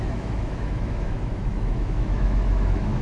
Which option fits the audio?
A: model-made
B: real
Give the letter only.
A